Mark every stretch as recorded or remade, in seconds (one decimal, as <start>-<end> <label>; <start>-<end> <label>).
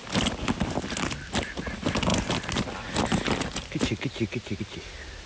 0.0-5.3 recorded